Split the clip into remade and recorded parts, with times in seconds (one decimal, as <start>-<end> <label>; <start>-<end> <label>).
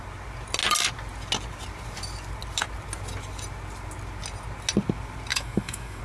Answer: 0.0-5.3 recorded; 5.3-6.0 remade